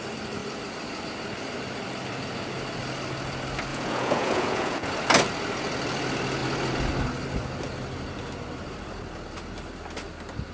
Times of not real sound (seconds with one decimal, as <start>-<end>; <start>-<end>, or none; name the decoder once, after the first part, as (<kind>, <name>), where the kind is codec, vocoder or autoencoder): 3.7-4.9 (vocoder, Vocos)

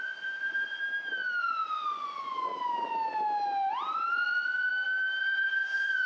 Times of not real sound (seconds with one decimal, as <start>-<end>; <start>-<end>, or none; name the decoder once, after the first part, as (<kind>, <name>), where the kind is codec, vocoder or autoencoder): 0.0-0.8 (vocoder, Vocos); 1.4-2.5; 4.1-4.7; 5.2-6.1

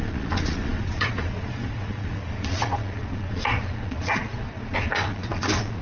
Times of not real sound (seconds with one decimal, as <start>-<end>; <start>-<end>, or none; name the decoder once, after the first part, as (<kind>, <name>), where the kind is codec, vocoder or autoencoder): 0.0-5.8 (vocoder, Vocos)

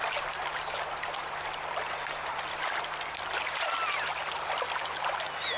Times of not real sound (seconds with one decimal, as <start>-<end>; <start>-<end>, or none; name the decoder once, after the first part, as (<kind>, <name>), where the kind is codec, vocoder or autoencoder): none

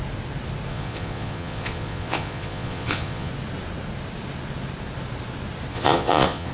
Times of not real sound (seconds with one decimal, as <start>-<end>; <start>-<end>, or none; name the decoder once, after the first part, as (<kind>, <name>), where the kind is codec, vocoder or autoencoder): 0.7-3.3 (vocoder, Vocos); 5.7-6.5